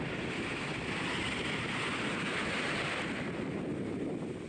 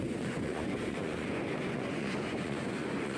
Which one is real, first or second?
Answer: first